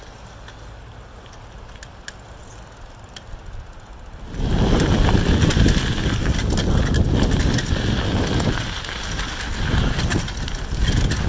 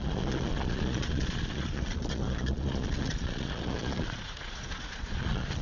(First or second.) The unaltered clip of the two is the first